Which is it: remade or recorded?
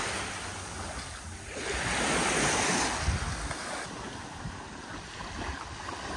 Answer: recorded